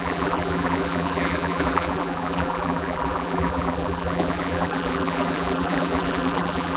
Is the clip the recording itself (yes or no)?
no